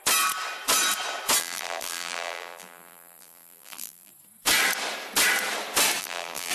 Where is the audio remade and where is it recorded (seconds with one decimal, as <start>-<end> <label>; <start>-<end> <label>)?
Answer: 0.0-1.4 recorded; 1.4-4.1 remade; 4.1-6.0 recorded; 6.0-6.5 remade